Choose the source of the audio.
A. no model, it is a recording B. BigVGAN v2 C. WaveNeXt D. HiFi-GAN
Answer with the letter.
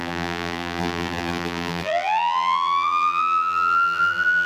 B